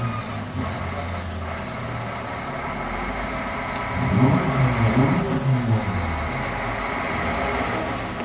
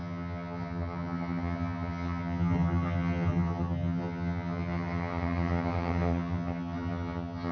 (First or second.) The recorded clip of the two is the first